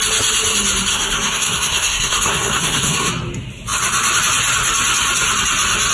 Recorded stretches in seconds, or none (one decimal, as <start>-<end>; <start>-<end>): 0.0-0.9; 3.1-5.9

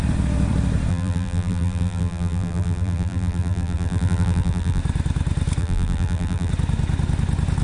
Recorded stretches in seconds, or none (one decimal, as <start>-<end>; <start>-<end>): 0.0-0.9; 4.8-5.6; 6.5-7.6

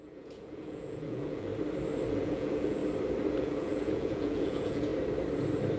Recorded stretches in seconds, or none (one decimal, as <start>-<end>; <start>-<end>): 1.5-2.1; 2.8-3.4; 4.9-5.8